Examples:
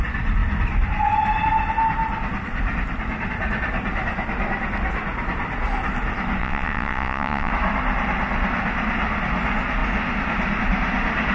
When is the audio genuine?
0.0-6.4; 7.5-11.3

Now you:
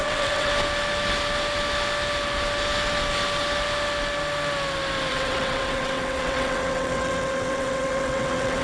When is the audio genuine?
0.5-5.1

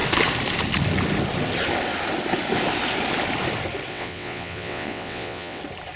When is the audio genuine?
0.0-3.9; 5.6-6.0

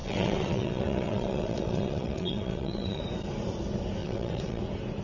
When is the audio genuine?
3.0-4.0; 4.6-5.0